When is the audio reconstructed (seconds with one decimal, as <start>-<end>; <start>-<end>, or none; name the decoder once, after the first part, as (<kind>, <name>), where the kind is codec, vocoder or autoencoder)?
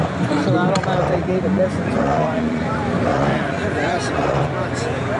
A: 1.2-2.7 (vocoder, Vocos); 3.1-4.5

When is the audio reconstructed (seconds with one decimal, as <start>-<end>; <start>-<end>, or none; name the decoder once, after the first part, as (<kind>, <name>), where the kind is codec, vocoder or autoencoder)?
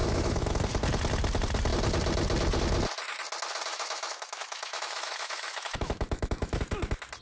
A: 0.0-0.6 (autoencoder, DAC-VAE); 3.7-6.6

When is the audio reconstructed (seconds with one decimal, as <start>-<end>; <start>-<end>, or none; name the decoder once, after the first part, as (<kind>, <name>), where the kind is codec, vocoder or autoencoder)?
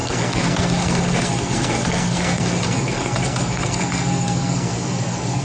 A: 0.0-5.4 (codec, SNAC)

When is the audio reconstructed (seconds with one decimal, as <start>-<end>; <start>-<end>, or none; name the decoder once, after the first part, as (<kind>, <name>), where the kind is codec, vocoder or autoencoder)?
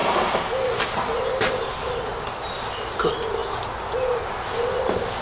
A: none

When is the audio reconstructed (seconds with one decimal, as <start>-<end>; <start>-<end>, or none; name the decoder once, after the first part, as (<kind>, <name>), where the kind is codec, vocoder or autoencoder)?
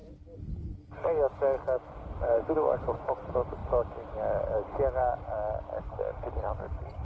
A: 2.2-3.6 (vocoder, BigVGAN v2); 6.3-7.0